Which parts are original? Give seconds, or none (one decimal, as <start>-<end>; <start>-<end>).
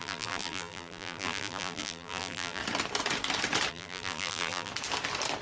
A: 2.6-3.7; 4.7-5.4